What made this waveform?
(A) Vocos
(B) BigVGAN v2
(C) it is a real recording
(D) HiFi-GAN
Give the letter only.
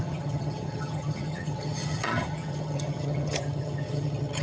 D